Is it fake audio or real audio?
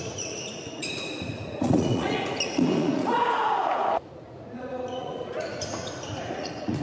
fake